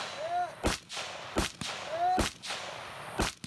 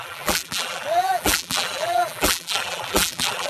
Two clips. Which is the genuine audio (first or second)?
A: first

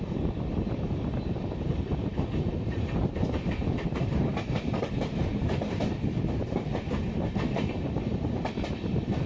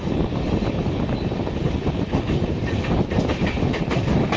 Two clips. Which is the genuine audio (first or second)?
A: second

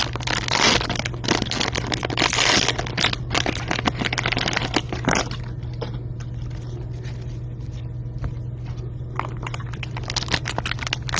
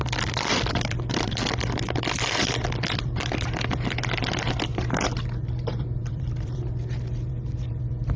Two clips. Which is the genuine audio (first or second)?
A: first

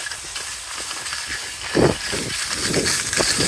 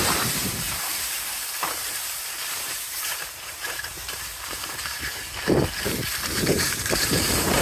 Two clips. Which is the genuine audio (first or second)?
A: first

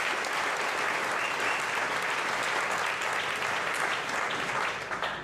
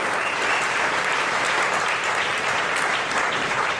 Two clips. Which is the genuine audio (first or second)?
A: first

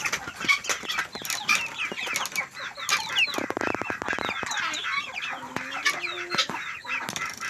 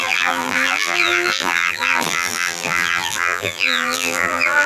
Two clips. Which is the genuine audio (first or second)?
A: first